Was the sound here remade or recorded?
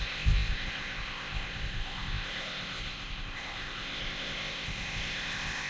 remade